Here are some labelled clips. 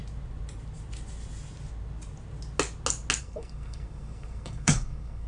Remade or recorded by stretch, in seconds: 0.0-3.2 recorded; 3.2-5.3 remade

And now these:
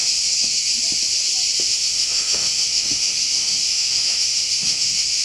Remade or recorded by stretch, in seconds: 0.0-0.7 remade; 0.7-1.6 recorded; 1.6-5.2 remade

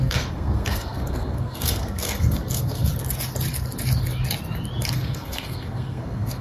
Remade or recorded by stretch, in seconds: 0.0-2.9 remade; 2.9-4.9 recorded; 4.9-6.4 remade

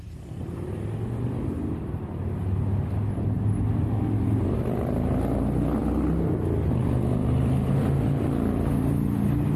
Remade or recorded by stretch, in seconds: 0.0-9.6 recorded

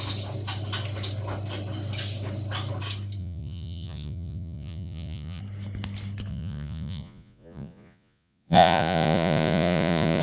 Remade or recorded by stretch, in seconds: 0.0-3.2 recorded; 3.2-5.4 remade; 5.4-6.3 recorded; 6.3-10.2 remade

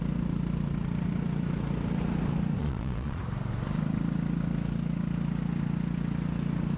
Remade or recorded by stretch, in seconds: 0.0-2.6 recorded; 2.6-3.2 remade; 3.2-6.8 recorded